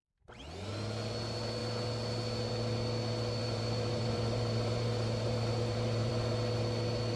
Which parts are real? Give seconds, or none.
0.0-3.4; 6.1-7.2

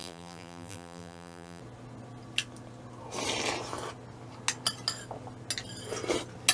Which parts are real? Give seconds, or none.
1.6-6.5

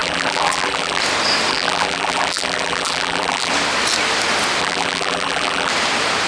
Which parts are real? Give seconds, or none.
1.0-1.5; 3.5-4.6; 5.7-6.3